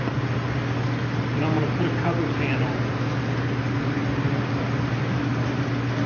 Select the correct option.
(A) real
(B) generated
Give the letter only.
A